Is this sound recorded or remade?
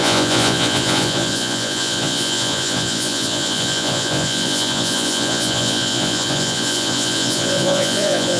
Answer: remade